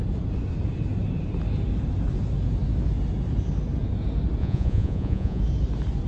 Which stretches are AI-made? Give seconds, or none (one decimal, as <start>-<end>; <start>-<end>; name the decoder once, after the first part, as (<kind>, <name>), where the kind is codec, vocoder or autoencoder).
4.4-5.4 (vocoder, Vocos)